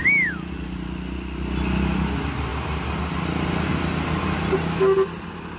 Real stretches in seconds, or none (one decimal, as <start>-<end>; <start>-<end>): 0.5-5.6